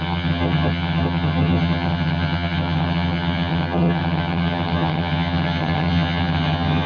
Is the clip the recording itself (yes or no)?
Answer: no